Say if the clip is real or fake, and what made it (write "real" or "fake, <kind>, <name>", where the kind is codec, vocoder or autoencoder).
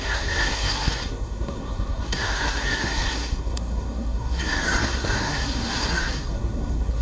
fake, codec, SNAC